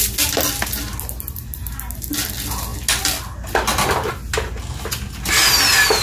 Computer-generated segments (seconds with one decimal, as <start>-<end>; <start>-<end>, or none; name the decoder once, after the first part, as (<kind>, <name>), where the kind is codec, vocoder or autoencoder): none

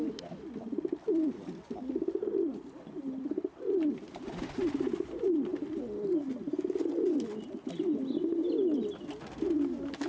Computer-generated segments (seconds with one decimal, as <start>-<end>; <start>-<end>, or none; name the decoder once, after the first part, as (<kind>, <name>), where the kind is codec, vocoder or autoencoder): none

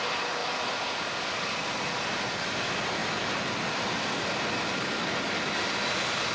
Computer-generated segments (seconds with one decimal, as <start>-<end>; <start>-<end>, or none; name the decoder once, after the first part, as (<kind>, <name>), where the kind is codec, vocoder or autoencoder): none

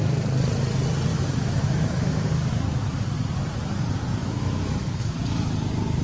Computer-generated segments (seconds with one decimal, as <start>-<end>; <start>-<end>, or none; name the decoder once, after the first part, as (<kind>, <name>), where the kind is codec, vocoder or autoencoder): 1.1-2.3 (autoencoder, DAC-VAE); 4.2-5.2

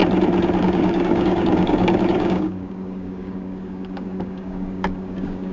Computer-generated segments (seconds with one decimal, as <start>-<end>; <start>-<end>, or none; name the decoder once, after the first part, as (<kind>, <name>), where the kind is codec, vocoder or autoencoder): 0.6-5.5 (codec, DAC)